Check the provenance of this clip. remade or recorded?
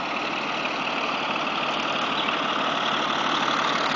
recorded